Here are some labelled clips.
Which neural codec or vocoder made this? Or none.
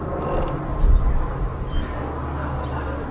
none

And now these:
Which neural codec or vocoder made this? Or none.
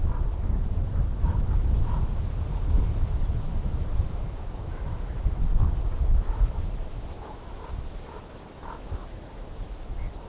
autoencoder, DAC-VAE